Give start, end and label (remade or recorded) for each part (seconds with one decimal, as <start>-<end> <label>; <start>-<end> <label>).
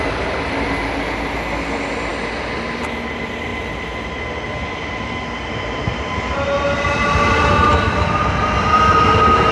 0.0-9.5 recorded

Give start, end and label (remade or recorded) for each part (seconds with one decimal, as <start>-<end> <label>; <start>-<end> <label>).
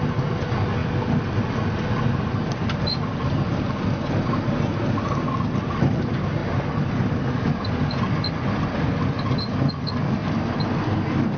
0.0-11.4 recorded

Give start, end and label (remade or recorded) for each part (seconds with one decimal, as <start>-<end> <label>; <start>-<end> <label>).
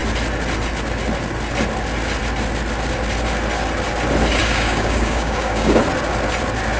0.0-4.4 recorded; 4.4-5.8 remade; 5.8-6.8 recorded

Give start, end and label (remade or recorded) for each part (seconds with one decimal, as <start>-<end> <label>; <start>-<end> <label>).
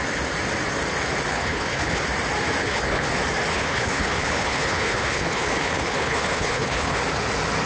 0.0-1.3 recorded; 1.3-2.0 remade; 2.0-2.6 recorded; 2.6-3.1 remade; 3.1-3.5 recorded; 3.5-7.0 remade; 7.0-7.7 recorded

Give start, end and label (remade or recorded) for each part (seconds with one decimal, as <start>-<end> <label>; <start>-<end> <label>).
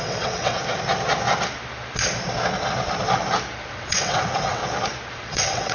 0.0-0.6 remade; 0.6-3.7 recorded; 3.7-4.6 remade; 4.6-5.1 recorded; 5.1-5.7 remade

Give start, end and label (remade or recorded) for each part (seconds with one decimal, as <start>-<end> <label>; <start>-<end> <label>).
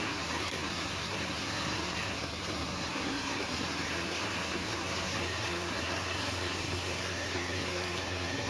0.0-8.5 remade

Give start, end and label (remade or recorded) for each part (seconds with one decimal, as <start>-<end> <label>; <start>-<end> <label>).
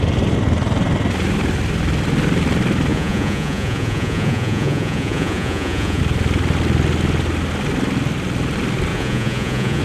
0.0-2.9 recorded; 2.9-6.0 remade; 6.0-8.9 recorded; 8.9-9.8 remade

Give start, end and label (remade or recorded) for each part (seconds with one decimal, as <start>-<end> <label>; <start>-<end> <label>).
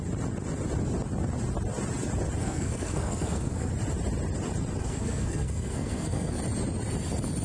0.0-2.4 recorded; 2.4-3.7 remade; 3.7-4.8 recorded; 4.8-6.4 remade; 6.4-7.4 recorded